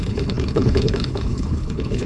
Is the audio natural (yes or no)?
no